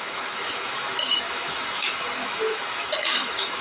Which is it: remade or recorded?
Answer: remade